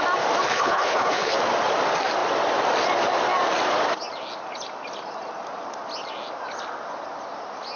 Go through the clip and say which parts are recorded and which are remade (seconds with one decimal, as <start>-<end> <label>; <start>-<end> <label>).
0.0-0.5 recorded; 0.5-1.3 remade; 1.3-7.8 recorded